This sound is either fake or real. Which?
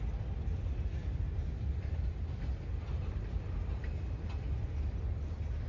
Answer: real